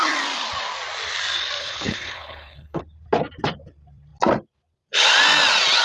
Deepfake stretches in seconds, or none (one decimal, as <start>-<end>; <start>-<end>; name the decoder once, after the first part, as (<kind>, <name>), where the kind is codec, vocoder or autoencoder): 1.6-2.8 (codec, HILCodec)